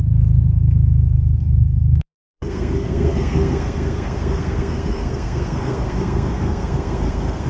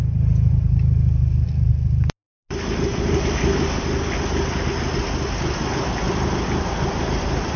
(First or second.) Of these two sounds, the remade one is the first